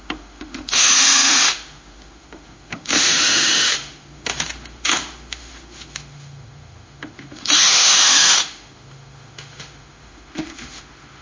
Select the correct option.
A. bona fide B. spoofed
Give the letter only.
B